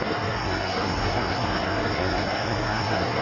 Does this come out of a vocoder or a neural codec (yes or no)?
yes